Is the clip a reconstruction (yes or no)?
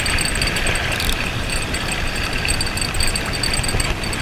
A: no